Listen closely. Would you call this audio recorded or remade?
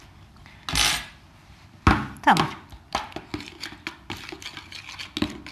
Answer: recorded